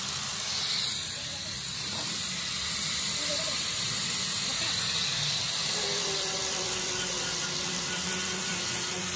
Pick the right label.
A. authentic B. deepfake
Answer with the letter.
B